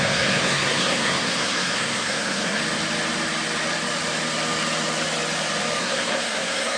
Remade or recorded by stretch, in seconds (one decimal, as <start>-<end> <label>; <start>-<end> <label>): 0.0-2.6 remade; 2.6-5.8 recorded; 5.8-6.8 remade